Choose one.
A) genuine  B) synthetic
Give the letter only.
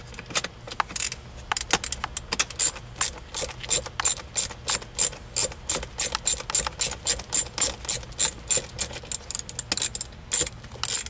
A